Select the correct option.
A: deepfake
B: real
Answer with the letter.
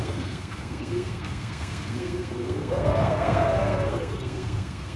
A